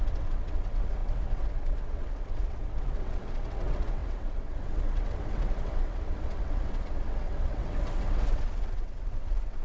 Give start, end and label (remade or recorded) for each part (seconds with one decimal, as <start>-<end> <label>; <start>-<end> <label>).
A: 0.0-9.6 remade